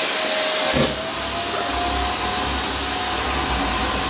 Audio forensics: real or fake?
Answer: real